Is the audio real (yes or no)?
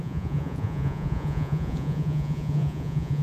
no